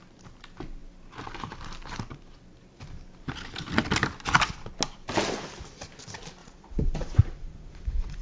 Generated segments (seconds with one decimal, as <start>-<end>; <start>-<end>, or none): 6.4-8.2